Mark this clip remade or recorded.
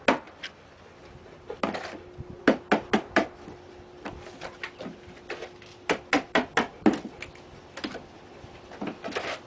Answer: recorded